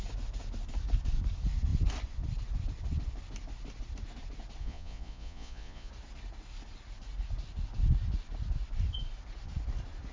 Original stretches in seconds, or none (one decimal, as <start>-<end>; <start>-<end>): 0.0-4.6; 5.9-10.1